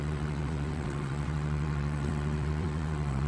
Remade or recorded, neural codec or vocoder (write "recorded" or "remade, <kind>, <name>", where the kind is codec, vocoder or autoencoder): remade, vocoder, WaveNeXt